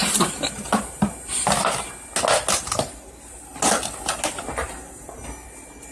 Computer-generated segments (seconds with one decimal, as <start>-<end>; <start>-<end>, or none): none